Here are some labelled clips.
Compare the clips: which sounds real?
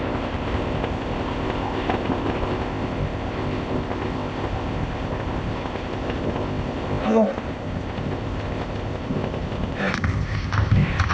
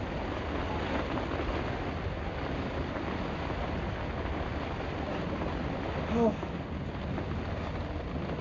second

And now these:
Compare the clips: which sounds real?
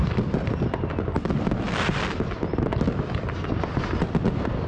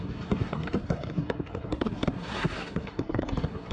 first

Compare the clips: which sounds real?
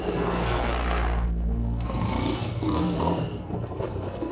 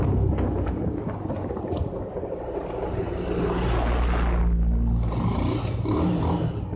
second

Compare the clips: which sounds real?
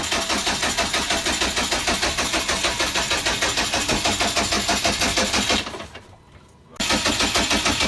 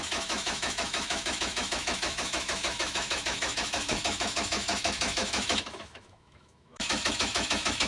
first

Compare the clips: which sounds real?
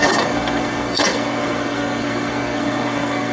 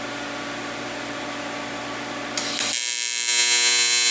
second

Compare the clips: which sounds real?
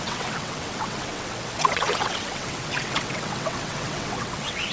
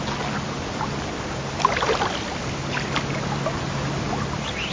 second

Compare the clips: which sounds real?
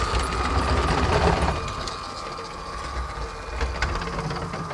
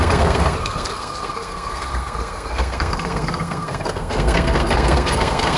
first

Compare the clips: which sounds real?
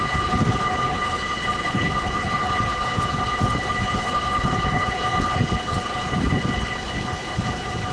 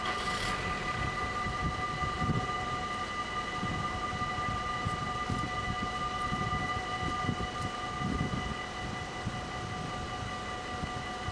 second